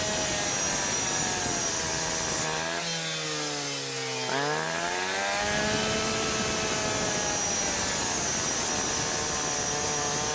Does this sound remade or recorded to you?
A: recorded